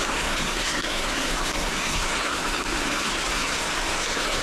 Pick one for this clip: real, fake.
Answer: fake